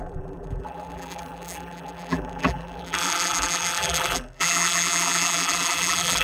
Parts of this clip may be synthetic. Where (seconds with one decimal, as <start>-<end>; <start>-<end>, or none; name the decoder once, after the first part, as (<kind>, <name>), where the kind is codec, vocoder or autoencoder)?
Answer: 0.0-6.2 (vocoder, BigVGAN v2)